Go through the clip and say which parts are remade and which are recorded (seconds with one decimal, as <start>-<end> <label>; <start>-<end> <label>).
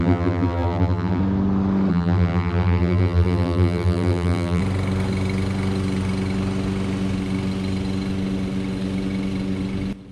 0.0-1.2 remade; 1.2-1.9 recorded; 1.9-4.6 remade; 4.6-10.1 recorded